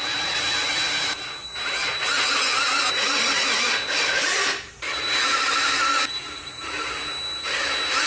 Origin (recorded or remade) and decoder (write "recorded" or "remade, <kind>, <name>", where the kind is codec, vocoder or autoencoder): recorded